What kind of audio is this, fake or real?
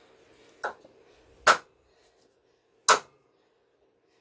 real